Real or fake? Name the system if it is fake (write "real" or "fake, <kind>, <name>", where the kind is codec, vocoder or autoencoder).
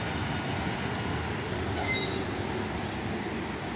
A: real